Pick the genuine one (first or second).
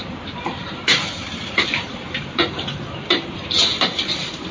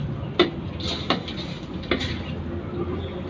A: second